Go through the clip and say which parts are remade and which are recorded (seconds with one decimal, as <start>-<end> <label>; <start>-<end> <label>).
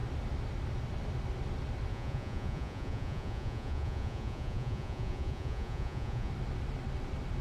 0.0-1.9 recorded; 1.9-6.3 remade; 6.3-7.4 recorded